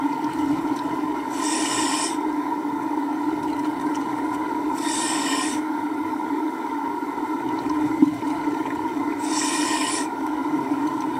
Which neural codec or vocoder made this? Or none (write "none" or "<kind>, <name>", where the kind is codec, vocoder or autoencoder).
codec, DAC